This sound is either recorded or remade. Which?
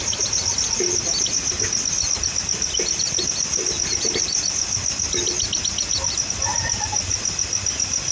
recorded